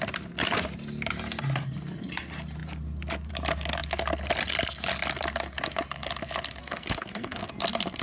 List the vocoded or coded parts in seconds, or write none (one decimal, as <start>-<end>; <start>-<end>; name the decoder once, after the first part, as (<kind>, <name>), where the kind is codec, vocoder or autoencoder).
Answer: 6.6-7.5 (codec, SNAC)